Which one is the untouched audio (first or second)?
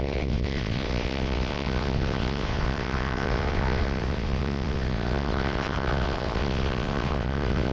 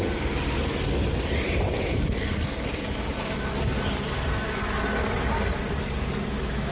second